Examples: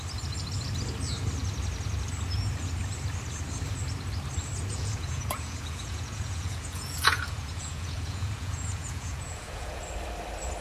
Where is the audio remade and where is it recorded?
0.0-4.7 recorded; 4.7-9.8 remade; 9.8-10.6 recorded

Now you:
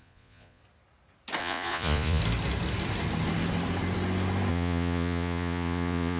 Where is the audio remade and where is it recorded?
0.0-0.6 remade; 0.6-1.4 recorded; 1.4-2.2 remade; 2.2-4.5 recorded; 4.5-6.2 remade

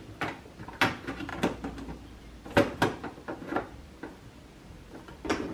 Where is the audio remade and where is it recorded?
0.0-5.5 recorded